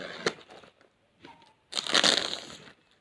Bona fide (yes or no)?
yes